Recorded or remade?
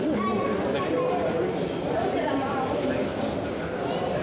recorded